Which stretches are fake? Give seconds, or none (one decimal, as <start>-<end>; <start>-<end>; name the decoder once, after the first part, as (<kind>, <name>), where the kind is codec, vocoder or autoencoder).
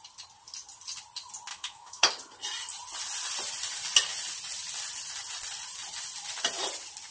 1.5-2.1 (autoencoder, DAC-VAE)